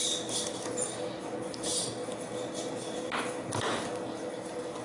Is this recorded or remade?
recorded